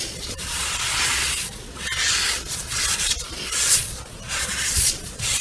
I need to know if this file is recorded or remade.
remade